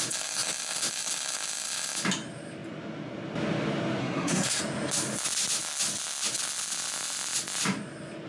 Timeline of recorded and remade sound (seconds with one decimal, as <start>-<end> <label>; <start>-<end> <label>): 0.0-4.0 recorded; 4.0-4.6 remade; 4.6-8.3 recorded